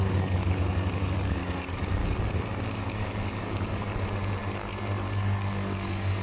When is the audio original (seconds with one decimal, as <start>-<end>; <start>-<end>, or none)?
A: 2.0-2.8; 3.9-5.0